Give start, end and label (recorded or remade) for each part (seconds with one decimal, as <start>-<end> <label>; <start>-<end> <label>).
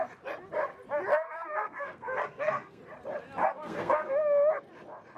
0.0-1.1 recorded; 1.1-2.8 remade; 2.8-3.4 recorded; 3.4-4.2 remade; 4.2-5.2 recorded